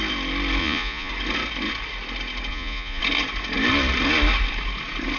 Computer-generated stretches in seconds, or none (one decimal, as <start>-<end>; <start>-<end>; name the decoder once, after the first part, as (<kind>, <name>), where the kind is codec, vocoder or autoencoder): 0.6-1.1 (vocoder, Vocos); 2.5-3.0